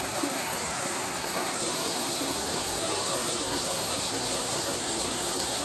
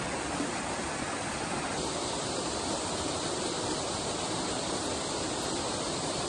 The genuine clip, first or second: second